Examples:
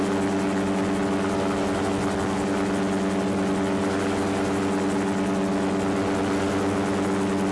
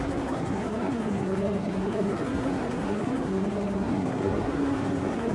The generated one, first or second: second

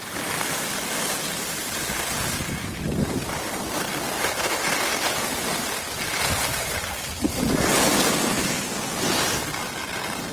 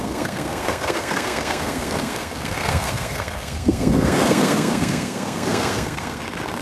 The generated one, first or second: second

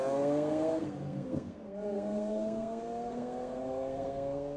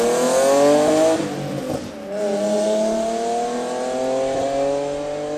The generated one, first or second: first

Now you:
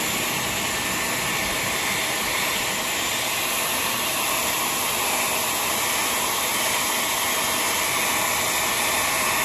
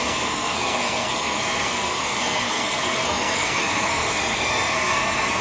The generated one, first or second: second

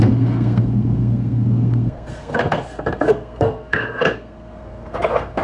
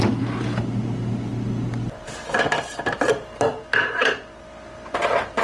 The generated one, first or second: first